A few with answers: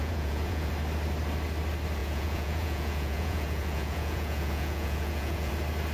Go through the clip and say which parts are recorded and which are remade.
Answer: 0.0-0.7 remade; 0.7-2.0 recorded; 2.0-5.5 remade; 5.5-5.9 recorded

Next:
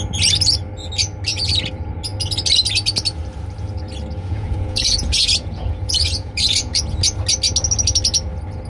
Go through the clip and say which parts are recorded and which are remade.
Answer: 0.0-4.1 recorded; 4.1-6.8 remade; 6.8-8.7 recorded

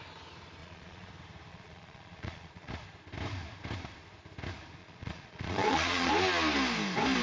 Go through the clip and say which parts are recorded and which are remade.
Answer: 0.0-0.6 recorded; 0.6-1.1 remade; 1.1-1.5 recorded; 1.5-2.7 remade; 2.7-4.8 recorded; 4.8-6.1 remade; 6.1-7.2 recorded

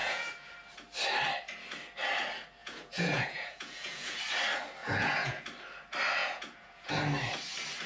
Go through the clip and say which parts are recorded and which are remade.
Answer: 0.0-0.5 remade; 0.5-2.6 recorded; 2.6-4.2 remade; 4.2-4.8 recorded; 4.8-5.4 remade; 5.4-6.2 recorded; 6.2-6.9 remade; 6.9-7.9 recorded

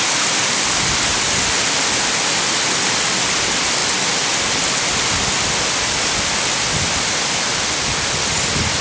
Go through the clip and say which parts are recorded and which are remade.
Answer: 0.0-8.8 recorded